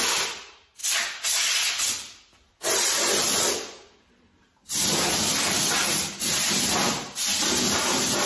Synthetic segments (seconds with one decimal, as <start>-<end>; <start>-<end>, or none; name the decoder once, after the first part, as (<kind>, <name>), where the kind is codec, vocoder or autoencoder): none